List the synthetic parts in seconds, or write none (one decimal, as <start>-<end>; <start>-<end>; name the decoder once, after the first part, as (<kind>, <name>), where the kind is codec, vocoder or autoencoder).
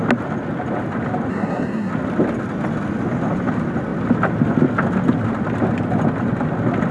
1.3-1.9 (codec, SNAC)